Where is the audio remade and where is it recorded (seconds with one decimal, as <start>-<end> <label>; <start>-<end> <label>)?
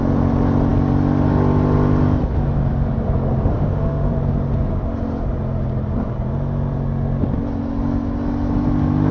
0.0-3.5 recorded; 3.5-4.1 remade; 4.1-9.1 recorded